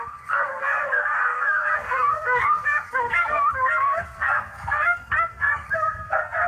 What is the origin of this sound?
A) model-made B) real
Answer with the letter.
A